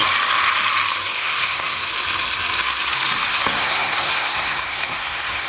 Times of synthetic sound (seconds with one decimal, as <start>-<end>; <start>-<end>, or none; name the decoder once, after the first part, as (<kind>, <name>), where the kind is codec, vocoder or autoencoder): 1.2-1.8 (codec, SNAC); 3.3-5.5

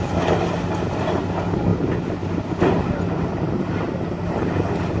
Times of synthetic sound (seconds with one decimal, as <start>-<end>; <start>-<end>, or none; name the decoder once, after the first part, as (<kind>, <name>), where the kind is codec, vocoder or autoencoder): none

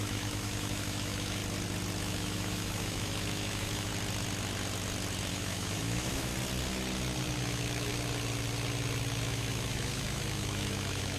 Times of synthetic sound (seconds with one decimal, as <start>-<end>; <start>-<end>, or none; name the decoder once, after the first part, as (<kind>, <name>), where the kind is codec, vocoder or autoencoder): 0.0-1.4 (autoencoder, DAC-VAE); 2.0-3.9; 5.3-6.3; 7.4-7.9; 9.2-11.2

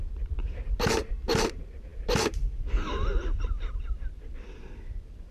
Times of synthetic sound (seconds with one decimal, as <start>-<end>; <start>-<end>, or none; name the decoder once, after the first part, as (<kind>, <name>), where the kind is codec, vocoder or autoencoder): none

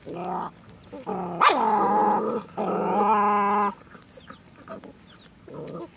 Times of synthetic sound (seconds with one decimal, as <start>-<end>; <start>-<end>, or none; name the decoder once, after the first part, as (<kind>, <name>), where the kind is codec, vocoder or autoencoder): none

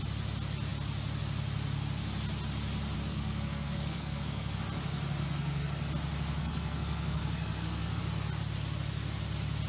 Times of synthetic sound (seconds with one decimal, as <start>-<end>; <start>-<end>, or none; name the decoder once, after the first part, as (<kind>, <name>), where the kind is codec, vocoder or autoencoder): 3.1-4.6 (codec, SNAC); 5.2-5.9; 6.4-8.0

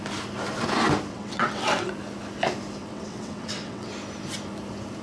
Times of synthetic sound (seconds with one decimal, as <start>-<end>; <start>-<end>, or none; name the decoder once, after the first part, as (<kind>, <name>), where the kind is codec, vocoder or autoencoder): 1.1-1.9 (vocoder, WaveNeXt); 2.8-3.9